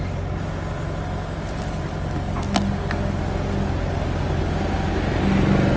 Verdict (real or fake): real